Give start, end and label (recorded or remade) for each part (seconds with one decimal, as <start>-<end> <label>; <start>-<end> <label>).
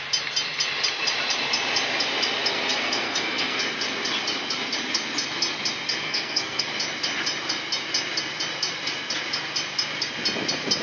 0.0-2.5 recorded; 2.5-3.6 remade; 3.6-6.0 recorded; 6.0-6.6 remade; 6.6-10.8 recorded